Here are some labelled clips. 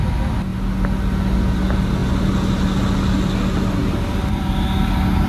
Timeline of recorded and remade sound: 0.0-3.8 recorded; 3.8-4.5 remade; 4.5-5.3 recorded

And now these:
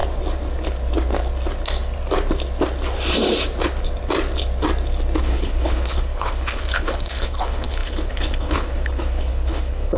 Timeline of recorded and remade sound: 0.0-5.2 recorded; 5.2-10.0 remade

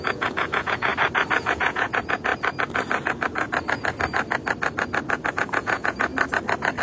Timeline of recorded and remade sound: 0.0-0.9 remade; 0.9-1.5 recorded; 1.5-2.3 remade; 2.3-5.3 recorded; 5.3-6.1 remade; 6.1-6.8 recorded

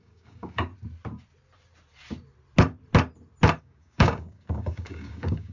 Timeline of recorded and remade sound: 0.0-0.7 remade; 0.7-3.6 recorded; 3.6-5.5 remade

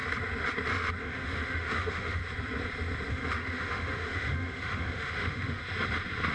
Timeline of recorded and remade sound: 0.0-1.0 recorded; 1.0-2.2 remade; 2.2-3.1 recorded; 3.1-5.6 remade; 5.6-6.3 recorded

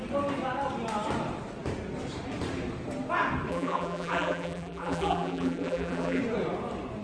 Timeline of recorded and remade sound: 0.0-3.5 recorded; 3.5-6.2 remade; 6.2-7.0 recorded

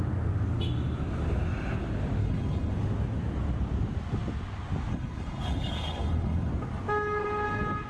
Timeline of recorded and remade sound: 0.0-2.2 recorded; 2.2-2.7 remade; 2.7-4.9 recorded; 4.9-6.5 remade; 6.5-7.9 recorded

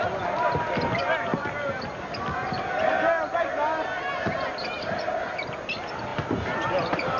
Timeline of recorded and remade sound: 0.0-7.2 recorded